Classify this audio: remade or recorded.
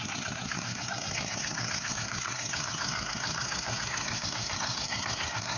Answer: remade